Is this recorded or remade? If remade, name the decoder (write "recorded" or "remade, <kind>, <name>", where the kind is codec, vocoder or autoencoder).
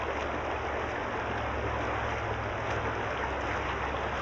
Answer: recorded